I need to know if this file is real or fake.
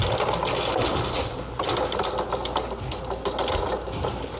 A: real